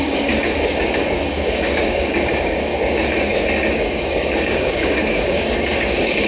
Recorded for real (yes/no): no